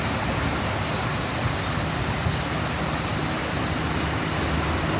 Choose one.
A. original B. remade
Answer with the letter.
A